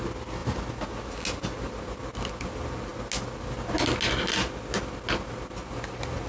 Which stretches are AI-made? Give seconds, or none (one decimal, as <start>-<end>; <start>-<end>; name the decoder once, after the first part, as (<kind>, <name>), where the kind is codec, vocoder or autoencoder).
none